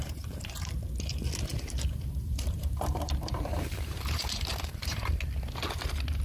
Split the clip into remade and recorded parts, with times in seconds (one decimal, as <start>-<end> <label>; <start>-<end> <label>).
0.0-0.8 remade; 0.8-1.5 recorded; 1.5-5.2 remade; 5.2-6.2 recorded